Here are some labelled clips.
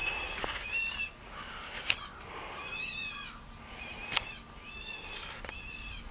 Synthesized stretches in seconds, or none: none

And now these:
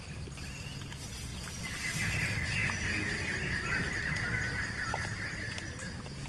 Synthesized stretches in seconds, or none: 1.3-2.0 (vocoder, BigVGAN v2); 2.6-5.5

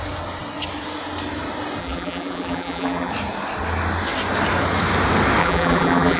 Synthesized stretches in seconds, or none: 1.8-3.1 (vocoder, BigVGAN v2); 5.4-6.2

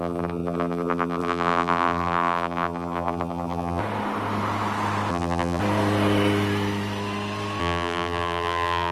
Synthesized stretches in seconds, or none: 0.0-3.8 (vocoder, BigVGAN v2); 5.1-5.6; 7.6-8.9

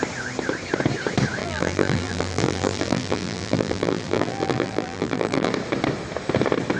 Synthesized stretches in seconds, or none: 1.4-5.5 (vocoder, BigVGAN v2)

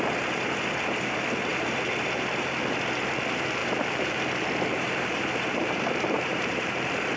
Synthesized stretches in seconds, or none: 3.6-4.2 (vocoder, BigVGAN v2); 4.7-6.7